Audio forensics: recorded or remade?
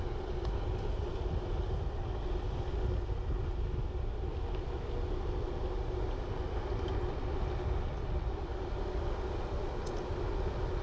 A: recorded